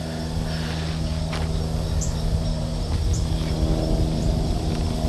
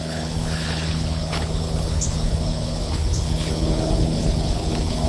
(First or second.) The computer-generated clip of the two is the second